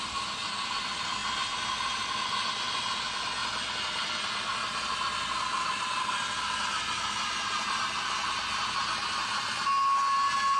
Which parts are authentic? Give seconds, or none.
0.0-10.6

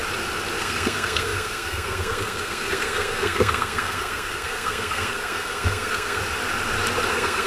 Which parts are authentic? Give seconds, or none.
0.0-0.6; 6.2-7.1

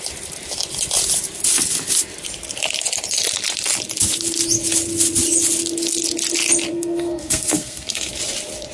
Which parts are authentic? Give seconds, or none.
0.0-6.7; 8.1-8.7

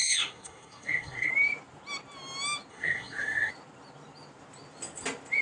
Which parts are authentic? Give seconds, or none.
1.3-2.7; 3.5-5.4

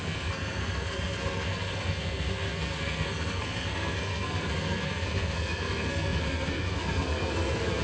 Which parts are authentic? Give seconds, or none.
none

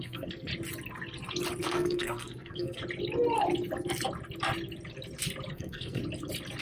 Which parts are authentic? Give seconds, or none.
0.5-1.6; 2.8-5.5; 6.0-6.6